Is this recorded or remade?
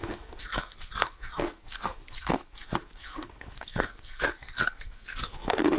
remade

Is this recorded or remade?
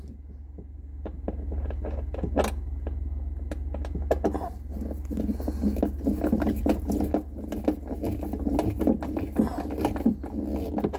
recorded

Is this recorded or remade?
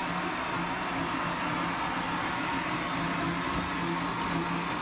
recorded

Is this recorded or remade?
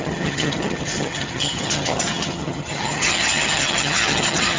remade